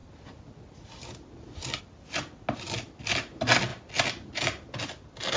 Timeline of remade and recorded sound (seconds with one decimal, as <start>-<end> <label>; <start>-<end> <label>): 0.0-5.4 recorded